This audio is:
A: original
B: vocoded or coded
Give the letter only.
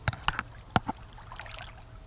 A